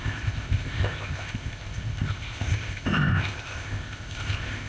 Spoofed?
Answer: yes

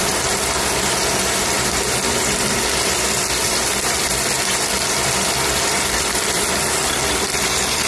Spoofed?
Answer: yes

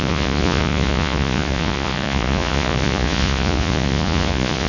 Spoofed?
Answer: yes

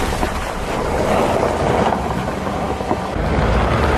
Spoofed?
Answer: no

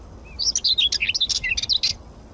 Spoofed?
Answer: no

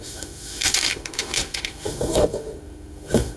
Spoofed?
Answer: yes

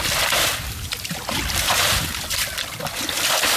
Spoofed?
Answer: no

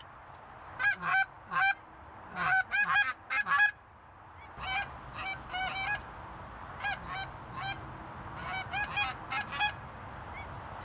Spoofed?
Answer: no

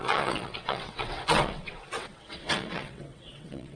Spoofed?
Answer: yes